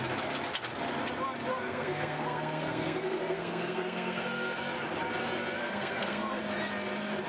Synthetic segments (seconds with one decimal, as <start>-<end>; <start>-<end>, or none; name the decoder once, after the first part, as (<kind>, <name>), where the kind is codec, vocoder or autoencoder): 1.5-4.6 (codec, SNAC); 5.6-6.4